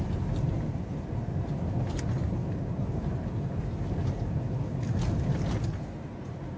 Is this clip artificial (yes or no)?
no